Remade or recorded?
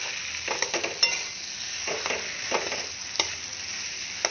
recorded